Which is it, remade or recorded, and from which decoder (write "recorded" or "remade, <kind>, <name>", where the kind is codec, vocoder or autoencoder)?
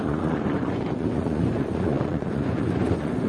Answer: remade, vocoder, Vocos